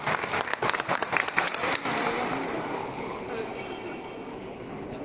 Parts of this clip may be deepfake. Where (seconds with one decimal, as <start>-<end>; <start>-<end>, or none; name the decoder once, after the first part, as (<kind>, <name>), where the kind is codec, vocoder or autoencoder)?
0.5-1.0 (codec, HILCodec); 2.8-3.3; 4.3-5.0